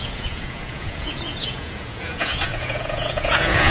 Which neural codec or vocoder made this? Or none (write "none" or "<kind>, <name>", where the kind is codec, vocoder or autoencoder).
vocoder, Vocos